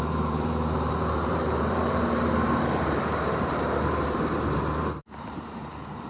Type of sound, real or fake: fake